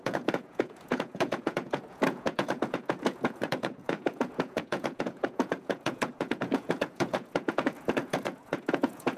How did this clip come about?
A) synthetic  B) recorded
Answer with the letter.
A